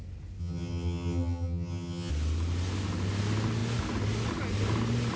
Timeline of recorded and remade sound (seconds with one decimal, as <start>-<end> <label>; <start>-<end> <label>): 0.0-0.4 recorded; 0.4-2.1 remade; 2.1-5.2 recorded

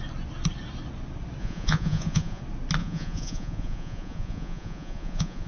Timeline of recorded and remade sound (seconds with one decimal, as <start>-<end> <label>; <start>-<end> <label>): 0.0-1.4 recorded; 1.4-2.4 remade; 2.4-2.8 recorded; 2.8-5.5 remade

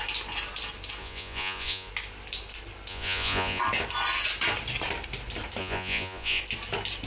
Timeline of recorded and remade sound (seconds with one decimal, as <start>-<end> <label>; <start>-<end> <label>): 0.0-1.0 recorded; 1.0-1.9 remade; 1.9-2.9 recorded; 2.9-3.6 remade; 3.6-5.6 recorded; 5.6-6.4 remade; 6.4-7.1 recorded

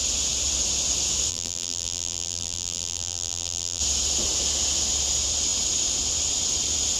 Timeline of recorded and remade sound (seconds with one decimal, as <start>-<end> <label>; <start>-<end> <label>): 0.0-1.3 recorded; 1.3-3.8 remade; 3.8-7.0 recorded

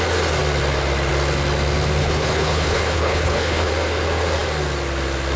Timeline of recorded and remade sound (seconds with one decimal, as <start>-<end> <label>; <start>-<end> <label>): 0.0-2.0 recorded; 2.0-3.7 remade; 3.7-5.4 recorded

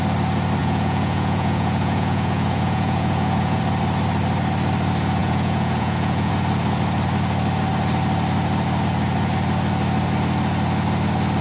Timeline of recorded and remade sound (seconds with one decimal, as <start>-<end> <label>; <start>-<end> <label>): 0.0-0.6 recorded; 0.6-3.6 remade; 3.6-5.2 recorded; 5.2-6.3 remade; 6.3-11.4 recorded

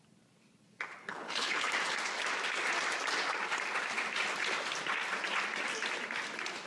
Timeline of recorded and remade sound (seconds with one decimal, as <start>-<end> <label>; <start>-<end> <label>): 0.0-1.0 recorded; 1.0-1.7 remade; 1.7-6.7 recorded